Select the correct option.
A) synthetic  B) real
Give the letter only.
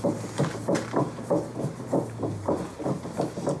B